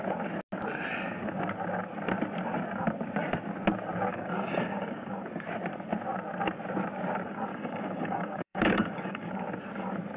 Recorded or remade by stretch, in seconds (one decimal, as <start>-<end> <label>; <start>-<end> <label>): 0.0-4.1 recorded; 4.1-5.2 remade; 5.2-7.5 recorded; 7.5-9.3 remade; 9.3-10.2 recorded